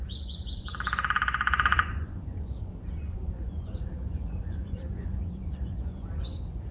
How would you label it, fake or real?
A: fake